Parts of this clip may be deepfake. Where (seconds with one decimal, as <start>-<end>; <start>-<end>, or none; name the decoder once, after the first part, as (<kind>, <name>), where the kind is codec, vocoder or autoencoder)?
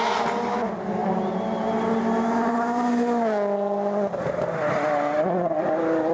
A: none